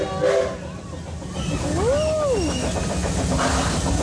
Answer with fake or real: real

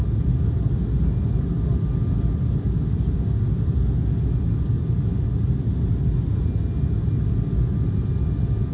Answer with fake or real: real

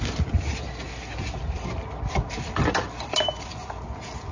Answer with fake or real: real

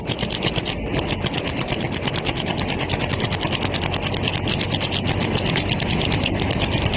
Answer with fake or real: real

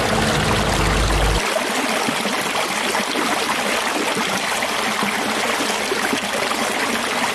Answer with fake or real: real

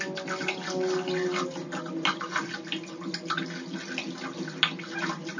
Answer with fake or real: real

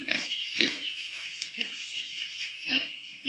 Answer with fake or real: fake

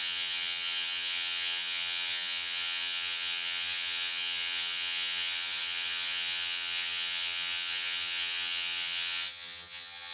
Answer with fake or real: fake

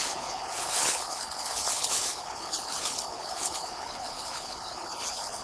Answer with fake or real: fake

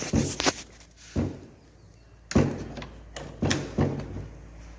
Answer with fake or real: real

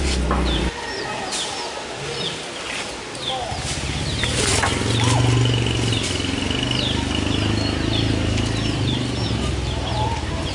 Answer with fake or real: real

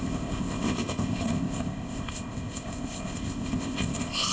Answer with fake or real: fake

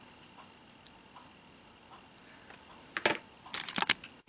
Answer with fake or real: real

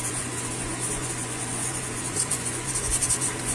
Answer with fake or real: fake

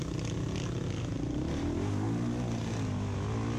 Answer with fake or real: real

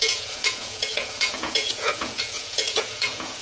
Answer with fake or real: fake